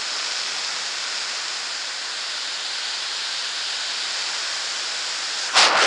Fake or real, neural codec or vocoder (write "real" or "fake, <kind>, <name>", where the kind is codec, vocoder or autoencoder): real